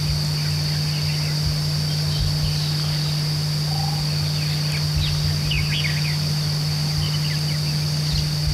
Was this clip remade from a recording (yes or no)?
no